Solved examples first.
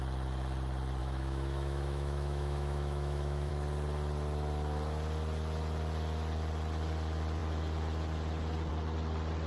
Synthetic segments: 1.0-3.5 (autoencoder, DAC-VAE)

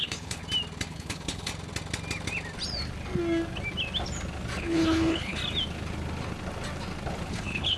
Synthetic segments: 0.0-0.4 (codec, HILCodec); 0.9-1.5; 4.6-5.4; 7.3-7.8

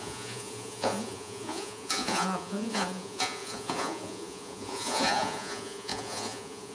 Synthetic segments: 0.0-6.7 (vocoder, Vocos)

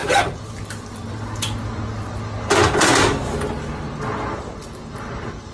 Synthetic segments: 0.0-1.7 (vocoder, BigVGAN v2)

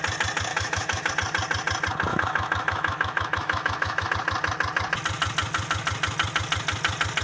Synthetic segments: 0.5-1.1 (autoencoder, DAC-VAE); 2.1-4.1

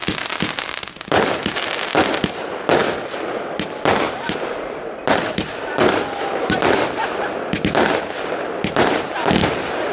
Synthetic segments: 0.0-2.8 (vocoder, BigVGAN v2); 4.9-9.9